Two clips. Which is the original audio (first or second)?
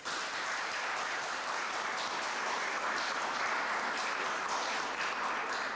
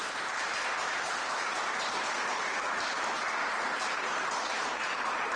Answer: first